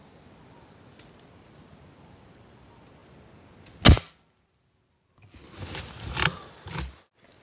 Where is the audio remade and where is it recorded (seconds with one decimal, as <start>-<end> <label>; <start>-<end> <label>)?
0.0-7.4 recorded